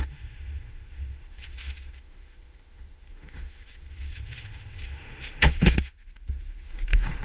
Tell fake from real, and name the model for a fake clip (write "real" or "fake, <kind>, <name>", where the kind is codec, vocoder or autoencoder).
fake, autoencoder, DAC-VAE